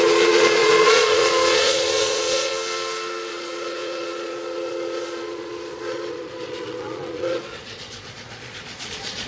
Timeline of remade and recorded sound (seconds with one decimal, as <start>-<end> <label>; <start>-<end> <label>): 0.0-2.5 remade; 2.5-3.3 recorded; 3.3-9.3 remade